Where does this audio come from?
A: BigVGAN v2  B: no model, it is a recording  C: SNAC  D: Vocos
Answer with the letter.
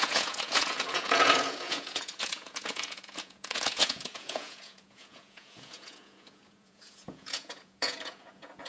D